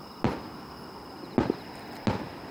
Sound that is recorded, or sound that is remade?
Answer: recorded